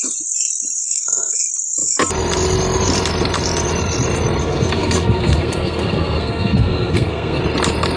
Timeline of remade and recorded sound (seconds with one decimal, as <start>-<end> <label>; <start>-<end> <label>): 0.0-0.8 recorded; 0.8-1.4 remade; 1.4-4.4 recorded; 4.4-7.4 remade; 7.4-8.0 recorded